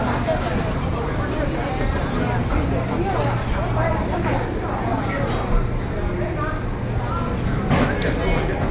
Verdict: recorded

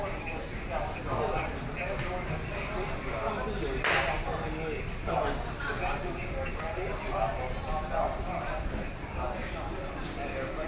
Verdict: recorded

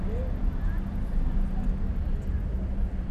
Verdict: recorded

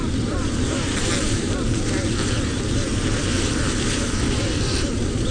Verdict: remade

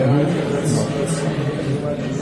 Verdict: remade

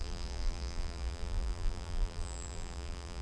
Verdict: remade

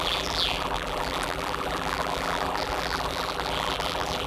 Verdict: remade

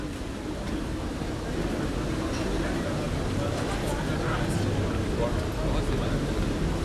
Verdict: recorded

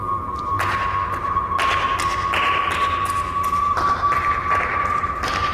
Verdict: recorded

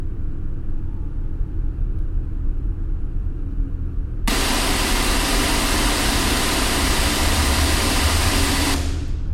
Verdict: recorded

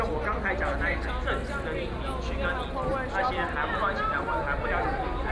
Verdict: recorded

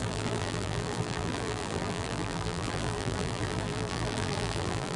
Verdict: remade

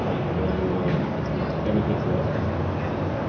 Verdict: recorded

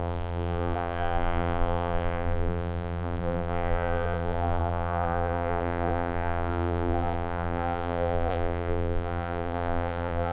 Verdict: remade